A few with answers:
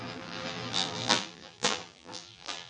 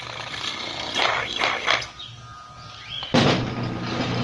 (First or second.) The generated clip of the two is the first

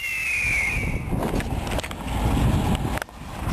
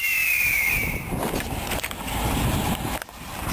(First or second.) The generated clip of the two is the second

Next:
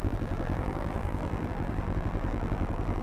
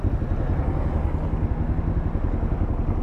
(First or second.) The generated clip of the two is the first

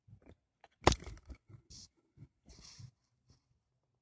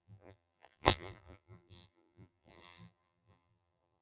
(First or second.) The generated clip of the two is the second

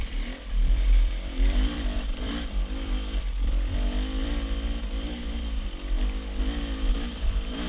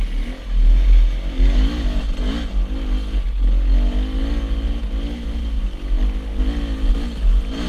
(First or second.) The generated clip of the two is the first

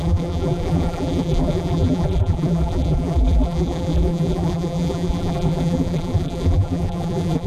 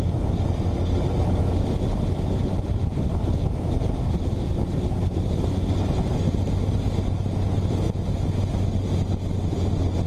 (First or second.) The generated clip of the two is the first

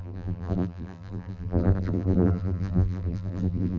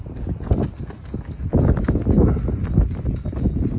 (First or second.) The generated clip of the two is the first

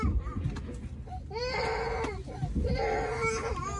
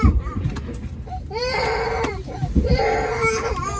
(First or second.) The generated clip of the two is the second